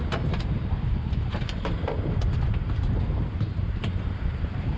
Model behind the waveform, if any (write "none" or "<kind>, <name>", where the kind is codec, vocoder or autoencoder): vocoder, BigVGAN v2